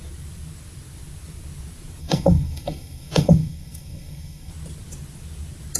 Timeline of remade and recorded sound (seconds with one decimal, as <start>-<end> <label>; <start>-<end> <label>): 0.0-2.0 recorded; 2.0-4.5 remade; 4.5-5.8 recorded